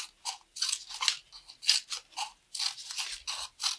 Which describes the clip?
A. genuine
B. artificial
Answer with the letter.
A